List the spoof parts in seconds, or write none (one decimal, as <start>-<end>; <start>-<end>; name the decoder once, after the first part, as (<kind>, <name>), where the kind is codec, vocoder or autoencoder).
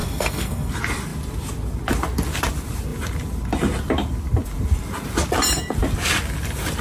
0.0-0.7 (codec, SNAC)